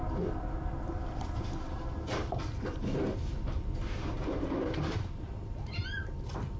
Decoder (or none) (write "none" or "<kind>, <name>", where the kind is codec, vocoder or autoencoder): none